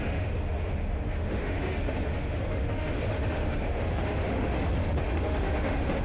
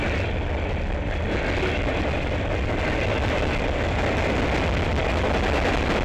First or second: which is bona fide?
second